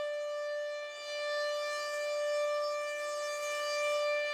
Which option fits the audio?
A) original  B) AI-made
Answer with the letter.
A